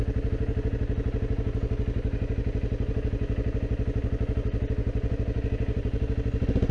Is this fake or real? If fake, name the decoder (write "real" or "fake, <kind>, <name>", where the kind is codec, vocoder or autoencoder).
real